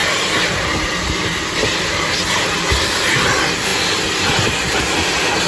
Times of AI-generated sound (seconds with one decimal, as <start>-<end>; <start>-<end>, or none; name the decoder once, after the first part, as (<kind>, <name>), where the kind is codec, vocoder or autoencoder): 0.0-3.7 (vocoder, BigVGAN v2); 4.3-5.5